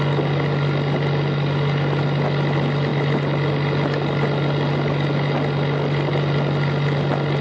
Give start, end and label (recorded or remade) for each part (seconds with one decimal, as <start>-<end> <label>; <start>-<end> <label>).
0.0-7.4 recorded